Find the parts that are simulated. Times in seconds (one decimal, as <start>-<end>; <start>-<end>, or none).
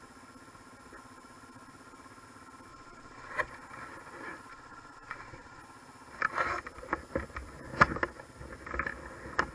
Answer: 2.7-3.5; 4.5-5.6